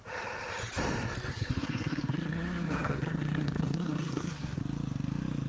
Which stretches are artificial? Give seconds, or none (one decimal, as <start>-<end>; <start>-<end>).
1.3-4.6